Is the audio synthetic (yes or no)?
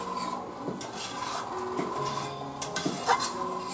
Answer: no